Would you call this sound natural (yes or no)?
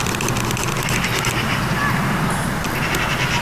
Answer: yes